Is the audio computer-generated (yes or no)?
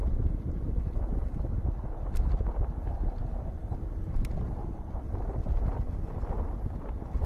no